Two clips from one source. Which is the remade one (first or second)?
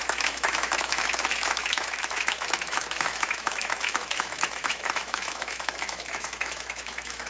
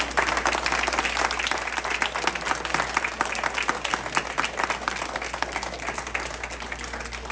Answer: first